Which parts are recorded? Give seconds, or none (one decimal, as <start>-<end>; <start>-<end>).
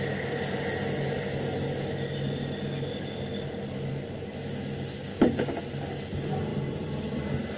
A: 0.0-5.1; 5.6-7.6